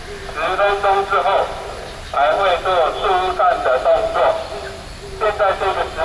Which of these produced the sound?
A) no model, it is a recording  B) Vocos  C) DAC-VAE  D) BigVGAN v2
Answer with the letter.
A